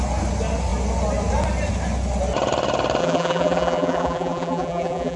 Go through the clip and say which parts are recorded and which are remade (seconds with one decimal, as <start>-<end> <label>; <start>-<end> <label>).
0.0-3.0 recorded; 3.0-5.2 remade